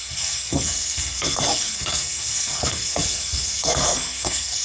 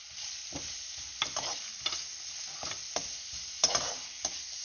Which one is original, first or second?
second